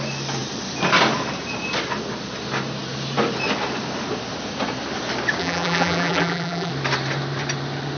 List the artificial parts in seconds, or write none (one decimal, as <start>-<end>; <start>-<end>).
5.4-6.7